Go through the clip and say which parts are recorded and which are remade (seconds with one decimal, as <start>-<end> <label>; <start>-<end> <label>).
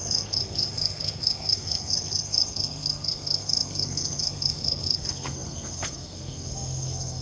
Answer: 0.0-7.2 remade